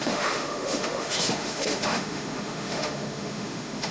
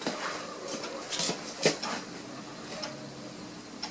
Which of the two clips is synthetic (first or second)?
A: first